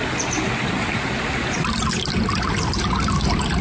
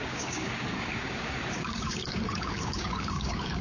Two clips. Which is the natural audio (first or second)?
first